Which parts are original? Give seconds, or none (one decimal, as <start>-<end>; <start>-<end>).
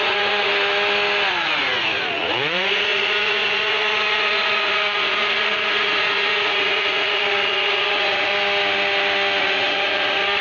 0.5-1.3; 8.3-9.4